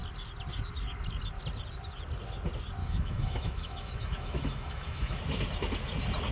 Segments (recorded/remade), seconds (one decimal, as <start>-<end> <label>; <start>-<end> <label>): 0.0-2.8 recorded; 2.8-5.2 remade; 5.2-6.3 recorded